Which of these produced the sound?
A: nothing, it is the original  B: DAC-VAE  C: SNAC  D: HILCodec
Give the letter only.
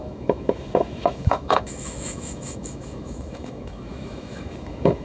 B